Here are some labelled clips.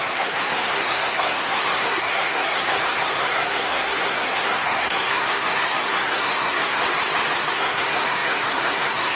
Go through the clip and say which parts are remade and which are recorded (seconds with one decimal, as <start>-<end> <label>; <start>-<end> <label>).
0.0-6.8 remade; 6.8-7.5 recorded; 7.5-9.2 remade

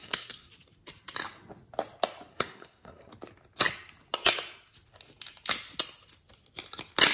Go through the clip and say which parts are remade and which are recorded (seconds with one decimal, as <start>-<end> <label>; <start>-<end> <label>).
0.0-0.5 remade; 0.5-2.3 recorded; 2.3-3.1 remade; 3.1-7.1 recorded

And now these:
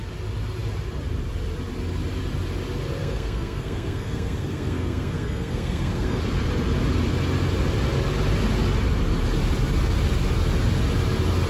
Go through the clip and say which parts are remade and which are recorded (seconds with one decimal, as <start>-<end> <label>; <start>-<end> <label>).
0.0-3.0 recorded; 3.0-6.2 remade; 6.2-11.5 recorded

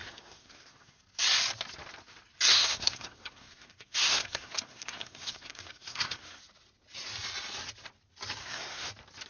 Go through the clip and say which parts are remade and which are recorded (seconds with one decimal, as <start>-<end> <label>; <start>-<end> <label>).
0.0-1.0 remade; 1.0-2.5 recorded; 2.5-6.4 remade; 6.4-8.4 recorded; 8.4-8.9 remade; 8.9-9.3 recorded

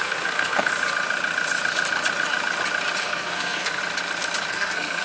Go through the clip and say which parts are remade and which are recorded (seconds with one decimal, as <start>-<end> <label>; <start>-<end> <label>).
0.0-0.7 remade; 0.7-3.0 recorded; 3.0-3.8 remade; 3.8-4.5 recorded; 4.5-5.0 remade

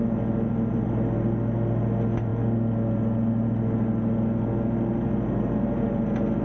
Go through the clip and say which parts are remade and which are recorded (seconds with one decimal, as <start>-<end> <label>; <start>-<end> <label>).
0.0-6.4 recorded